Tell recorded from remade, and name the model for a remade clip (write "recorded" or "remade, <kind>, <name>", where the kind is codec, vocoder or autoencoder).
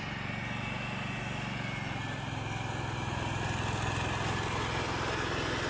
recorded